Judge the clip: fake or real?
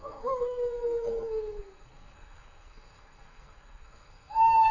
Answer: fake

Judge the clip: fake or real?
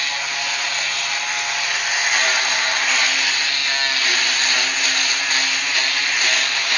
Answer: real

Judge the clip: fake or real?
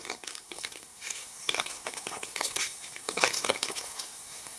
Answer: fake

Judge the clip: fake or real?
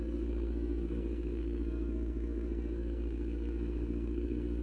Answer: fake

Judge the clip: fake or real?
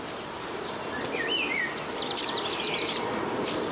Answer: real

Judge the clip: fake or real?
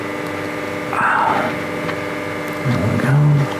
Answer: real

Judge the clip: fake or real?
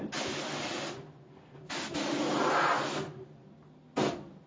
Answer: real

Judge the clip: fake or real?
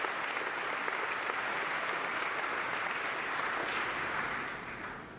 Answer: real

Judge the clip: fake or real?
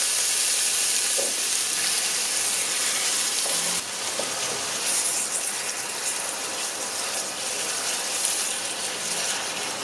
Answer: real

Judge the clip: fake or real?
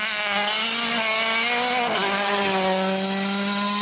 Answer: real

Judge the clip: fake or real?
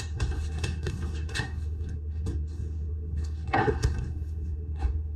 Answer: fake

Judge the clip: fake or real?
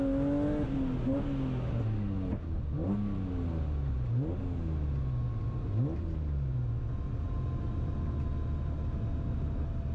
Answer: real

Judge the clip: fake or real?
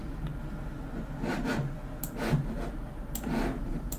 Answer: real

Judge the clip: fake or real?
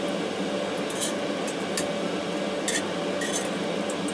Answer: real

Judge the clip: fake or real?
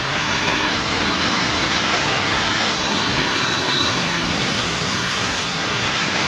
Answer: fake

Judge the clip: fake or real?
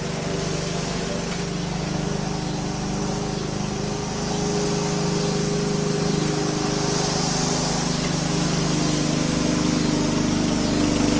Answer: real